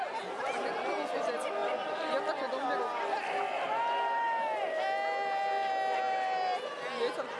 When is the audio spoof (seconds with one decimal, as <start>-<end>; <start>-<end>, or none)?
none